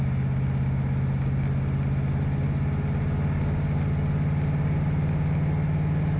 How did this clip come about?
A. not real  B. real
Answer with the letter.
B